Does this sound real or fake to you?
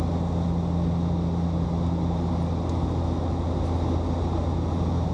real